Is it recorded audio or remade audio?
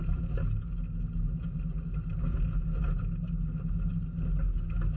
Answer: recorded